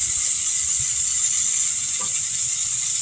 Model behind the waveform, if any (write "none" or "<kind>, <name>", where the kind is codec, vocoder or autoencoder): none